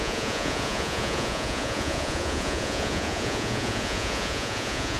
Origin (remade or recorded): remade